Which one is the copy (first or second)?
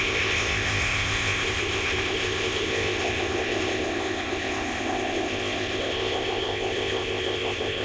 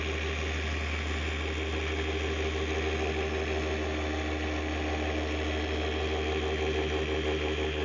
first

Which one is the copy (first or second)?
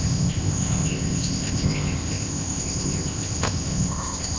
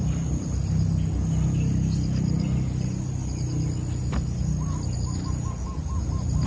first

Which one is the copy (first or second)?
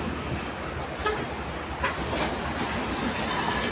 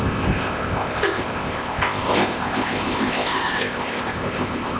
second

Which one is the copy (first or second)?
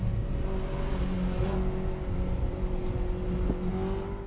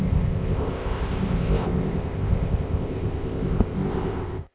second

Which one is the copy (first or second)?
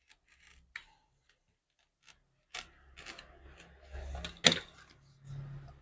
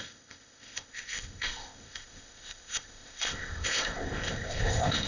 second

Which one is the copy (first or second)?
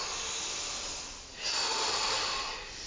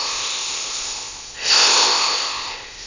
second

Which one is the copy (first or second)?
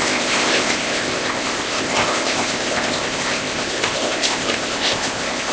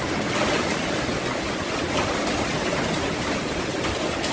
first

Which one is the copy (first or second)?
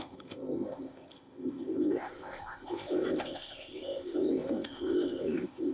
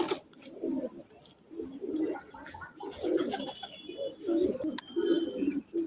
first